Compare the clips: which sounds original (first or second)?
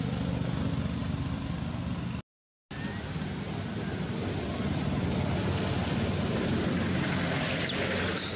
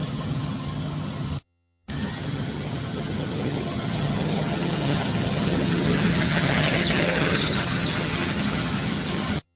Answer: first